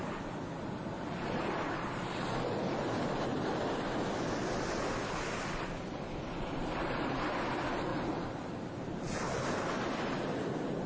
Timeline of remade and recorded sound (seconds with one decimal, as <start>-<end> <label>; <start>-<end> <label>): 0.0-10.9 recorded